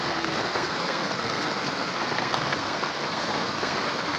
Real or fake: fake